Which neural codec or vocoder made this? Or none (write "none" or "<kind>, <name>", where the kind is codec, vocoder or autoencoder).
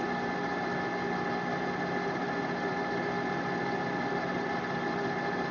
none